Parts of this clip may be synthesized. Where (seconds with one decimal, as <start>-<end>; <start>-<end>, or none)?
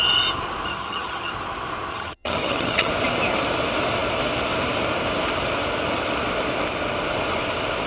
0.7-1.3; 1.9-2.9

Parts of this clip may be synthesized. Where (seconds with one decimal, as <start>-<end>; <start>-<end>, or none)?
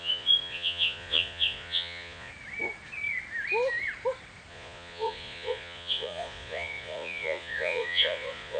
0.0-2.3; 4.5-8.6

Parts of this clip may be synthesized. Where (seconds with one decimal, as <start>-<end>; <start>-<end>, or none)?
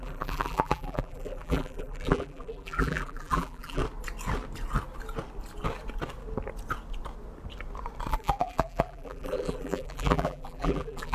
0.0-3.8; 8.1-11.1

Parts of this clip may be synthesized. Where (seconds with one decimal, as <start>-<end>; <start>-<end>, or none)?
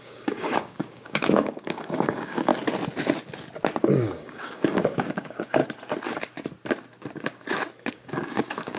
0.0-2.5; 3.9-5.6; 7.9-8.8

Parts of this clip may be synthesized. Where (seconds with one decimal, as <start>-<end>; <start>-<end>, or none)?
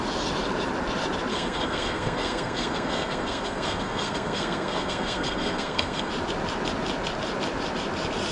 1.3-6.1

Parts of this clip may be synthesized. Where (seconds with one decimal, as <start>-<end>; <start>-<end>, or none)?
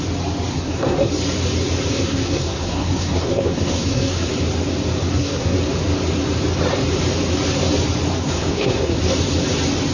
0.5-1.1; 1.9-4.3; 5.0-5.6; 8.2-9.0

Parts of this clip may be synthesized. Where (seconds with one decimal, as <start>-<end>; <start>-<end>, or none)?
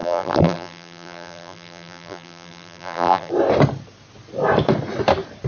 0.0-3.3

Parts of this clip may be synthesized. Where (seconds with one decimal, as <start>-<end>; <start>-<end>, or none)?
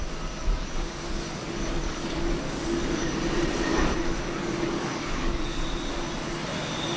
0.4-3.1; 3.7-5.6